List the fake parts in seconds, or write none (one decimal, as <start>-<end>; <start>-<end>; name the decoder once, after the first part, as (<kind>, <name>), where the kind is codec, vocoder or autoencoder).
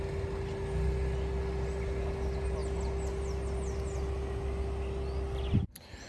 none